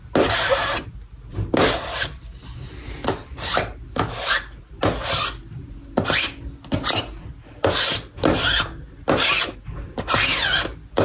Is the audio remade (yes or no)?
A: no